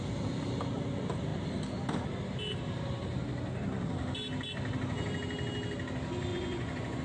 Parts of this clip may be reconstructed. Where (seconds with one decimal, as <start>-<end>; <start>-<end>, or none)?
6.3-7.0